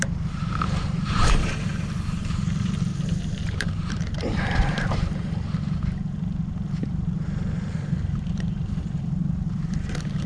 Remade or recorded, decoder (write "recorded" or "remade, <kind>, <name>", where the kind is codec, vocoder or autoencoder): remade, vocoder, BigVGAN v2